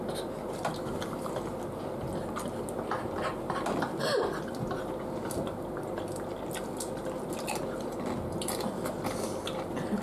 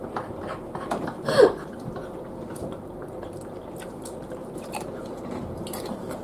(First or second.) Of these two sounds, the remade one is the second